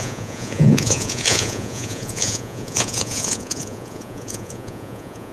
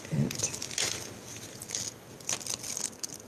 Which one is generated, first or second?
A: first